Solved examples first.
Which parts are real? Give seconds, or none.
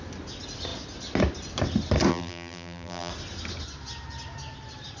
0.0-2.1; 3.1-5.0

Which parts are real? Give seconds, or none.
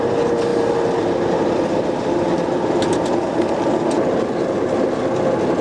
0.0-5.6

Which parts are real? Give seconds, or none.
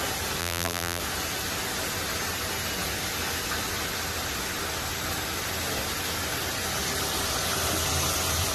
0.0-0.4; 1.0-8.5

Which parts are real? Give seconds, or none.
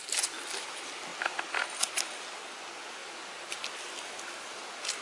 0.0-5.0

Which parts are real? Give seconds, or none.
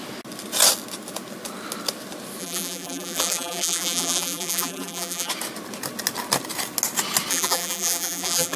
0.0-2.4; 5.3-7.3